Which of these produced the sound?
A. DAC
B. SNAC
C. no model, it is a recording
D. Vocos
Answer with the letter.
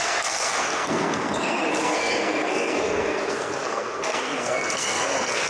B